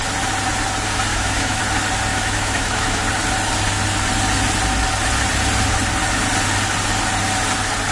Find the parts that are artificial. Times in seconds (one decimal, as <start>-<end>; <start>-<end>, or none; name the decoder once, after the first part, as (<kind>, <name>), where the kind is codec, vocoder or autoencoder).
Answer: 1.1-1.6 (autoencoder, DAC-VAE); 2.1-3.0